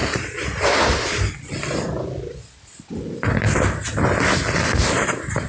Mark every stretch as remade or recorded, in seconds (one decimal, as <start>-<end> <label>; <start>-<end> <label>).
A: 0.0-5.5 recorded